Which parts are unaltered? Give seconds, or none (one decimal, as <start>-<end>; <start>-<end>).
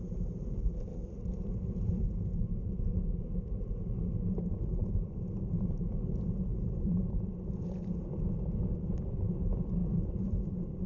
0.9-1.7